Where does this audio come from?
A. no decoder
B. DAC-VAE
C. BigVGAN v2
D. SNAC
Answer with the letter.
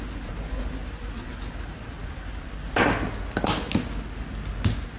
A